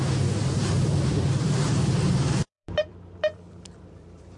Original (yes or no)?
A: no